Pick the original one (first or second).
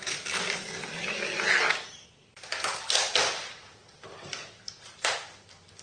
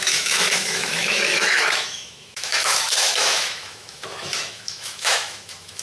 first